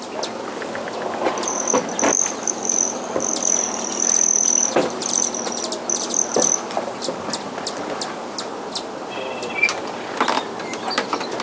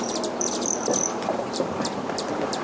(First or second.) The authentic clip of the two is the first